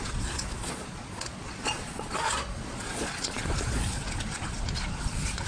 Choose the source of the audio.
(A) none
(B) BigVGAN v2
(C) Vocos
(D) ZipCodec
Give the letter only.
C